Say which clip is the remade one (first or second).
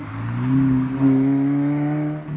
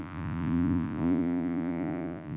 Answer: second